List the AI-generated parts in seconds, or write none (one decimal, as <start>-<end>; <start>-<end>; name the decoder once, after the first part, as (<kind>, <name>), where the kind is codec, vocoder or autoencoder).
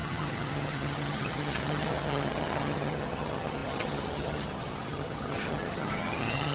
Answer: 0.0-6.5 (vocoder, HiFi-GAN)